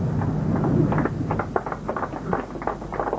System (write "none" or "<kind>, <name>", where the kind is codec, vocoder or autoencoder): none